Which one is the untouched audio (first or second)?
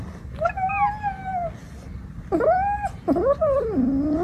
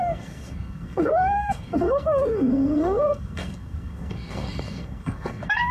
first